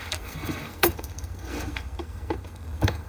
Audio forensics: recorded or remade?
remade